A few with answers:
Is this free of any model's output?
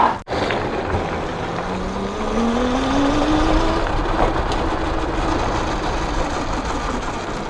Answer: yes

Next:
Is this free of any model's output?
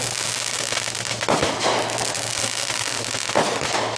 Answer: yes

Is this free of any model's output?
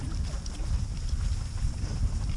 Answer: yes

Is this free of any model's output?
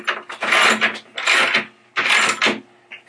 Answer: yes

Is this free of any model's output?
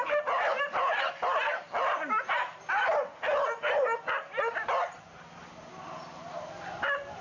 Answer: yes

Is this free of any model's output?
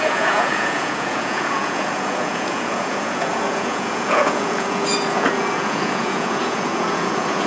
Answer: no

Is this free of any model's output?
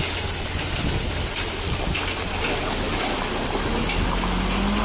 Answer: yes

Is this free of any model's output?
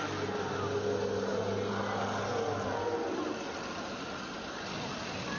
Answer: yes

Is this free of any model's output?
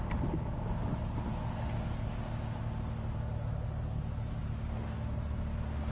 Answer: yes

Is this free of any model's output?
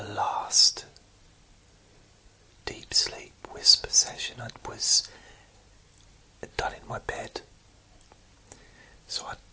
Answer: yes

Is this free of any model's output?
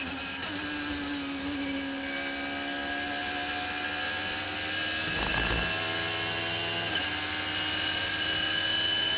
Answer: yes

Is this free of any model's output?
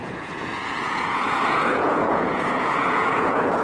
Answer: no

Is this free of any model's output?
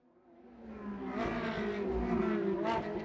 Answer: yes